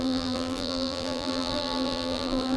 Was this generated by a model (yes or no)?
yes